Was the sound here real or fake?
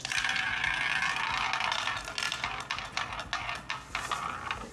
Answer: real